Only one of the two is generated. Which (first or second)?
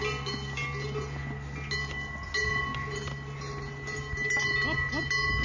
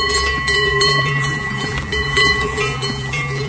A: second